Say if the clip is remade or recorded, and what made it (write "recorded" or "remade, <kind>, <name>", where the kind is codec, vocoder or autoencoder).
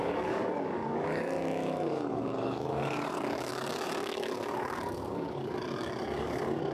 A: remade, codec, DAC